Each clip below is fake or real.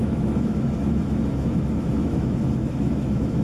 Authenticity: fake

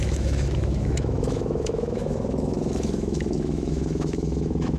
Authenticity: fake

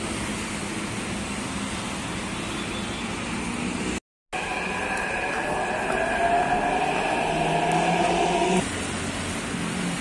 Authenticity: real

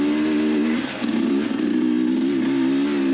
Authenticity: real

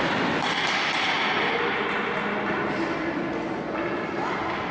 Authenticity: real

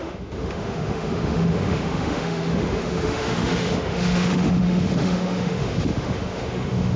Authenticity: fake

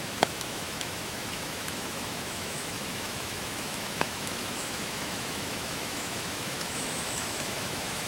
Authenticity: fake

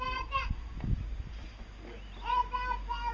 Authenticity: real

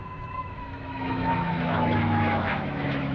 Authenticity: fake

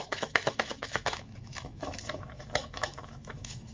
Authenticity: fake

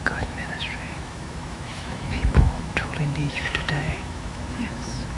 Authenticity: fake